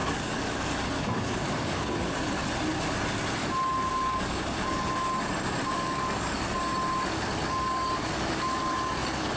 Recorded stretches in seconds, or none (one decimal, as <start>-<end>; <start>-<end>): 2.4-3.9; 5.1-5.7; 6.7-7.5